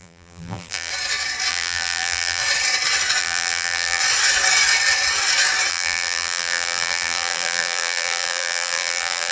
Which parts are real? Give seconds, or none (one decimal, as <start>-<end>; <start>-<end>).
0.9-1.5; 2.4-3.2; 4.0-5.7